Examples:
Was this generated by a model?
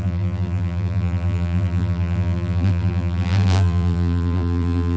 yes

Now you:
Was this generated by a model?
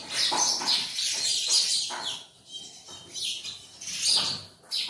no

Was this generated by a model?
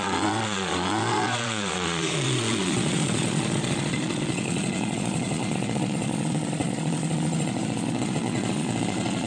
yes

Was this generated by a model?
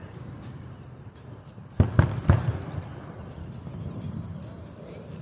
no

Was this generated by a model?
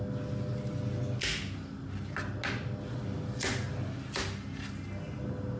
no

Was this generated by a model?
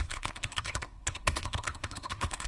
yes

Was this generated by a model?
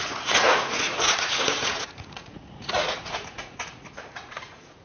yes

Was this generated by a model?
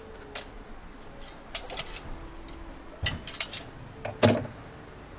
no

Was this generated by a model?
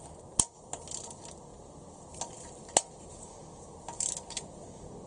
no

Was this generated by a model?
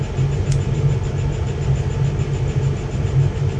no